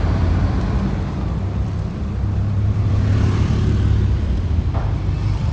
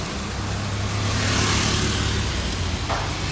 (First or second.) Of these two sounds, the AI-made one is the first